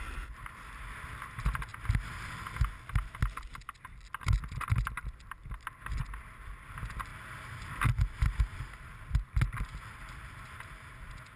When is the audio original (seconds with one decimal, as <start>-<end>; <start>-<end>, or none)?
0.0-11.4